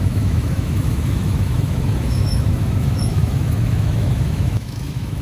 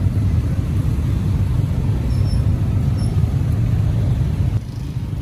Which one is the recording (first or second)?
second